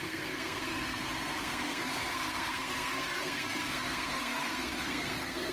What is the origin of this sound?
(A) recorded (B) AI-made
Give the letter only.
B